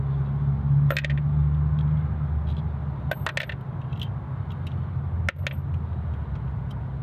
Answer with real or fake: real